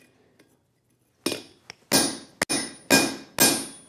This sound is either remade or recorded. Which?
recorded